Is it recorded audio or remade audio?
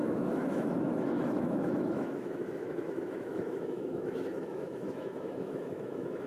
remade